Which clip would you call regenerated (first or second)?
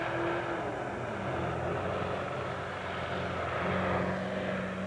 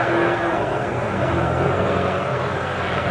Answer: second